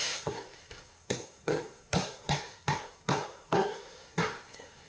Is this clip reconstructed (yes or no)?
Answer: yes